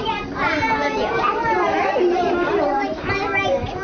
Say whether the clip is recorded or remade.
remade